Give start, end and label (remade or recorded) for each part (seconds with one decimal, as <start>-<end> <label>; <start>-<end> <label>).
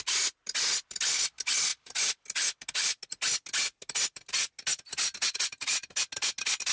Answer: 0.0-6.7 recorded